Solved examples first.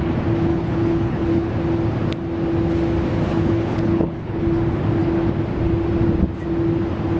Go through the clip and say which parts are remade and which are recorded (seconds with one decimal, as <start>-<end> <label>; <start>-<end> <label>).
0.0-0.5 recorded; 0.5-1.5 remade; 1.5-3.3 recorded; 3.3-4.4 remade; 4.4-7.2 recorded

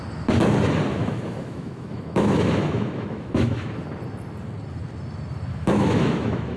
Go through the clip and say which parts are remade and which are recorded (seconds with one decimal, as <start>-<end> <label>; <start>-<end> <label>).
0.0-0.9 recorded; 0.9-3.7 remade; 3.7-5.5 recorded; 5.5-6.6 remade

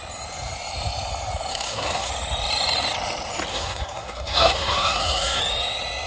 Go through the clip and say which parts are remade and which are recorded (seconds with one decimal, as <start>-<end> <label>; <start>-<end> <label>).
0.0-1.5 recorded; 1.5-2.1 remade; 2.1-3.5 recorded; 3.5-5.4 remade; 5.4-6.1 recorded